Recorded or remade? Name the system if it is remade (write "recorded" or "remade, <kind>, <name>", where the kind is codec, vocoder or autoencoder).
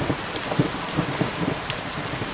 remade, vocoder, BigVGAN v2